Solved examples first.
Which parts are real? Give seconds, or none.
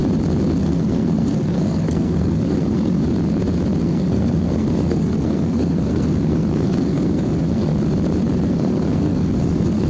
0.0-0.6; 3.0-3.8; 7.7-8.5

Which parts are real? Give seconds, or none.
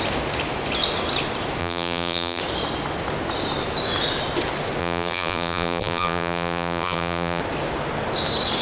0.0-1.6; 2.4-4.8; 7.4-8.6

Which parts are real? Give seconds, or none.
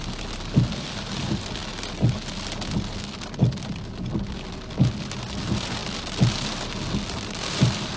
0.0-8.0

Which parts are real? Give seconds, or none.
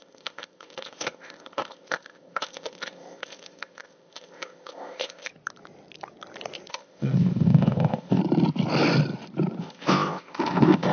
5.3-6.7; 8.2-9.6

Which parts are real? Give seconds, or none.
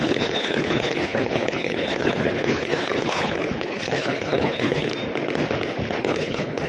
4.9-6.0